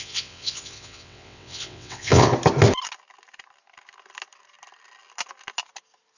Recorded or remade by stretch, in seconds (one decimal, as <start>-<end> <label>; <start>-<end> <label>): 0.0-2.3 remade; 2.3-6.2 recorded